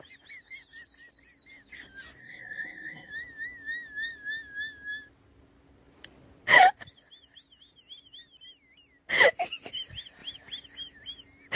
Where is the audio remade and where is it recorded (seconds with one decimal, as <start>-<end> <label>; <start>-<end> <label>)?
0.0-2.2 recorded; 2.2-3.1 remade; 3.1-11.6 recorded